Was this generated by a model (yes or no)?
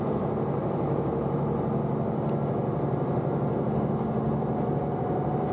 no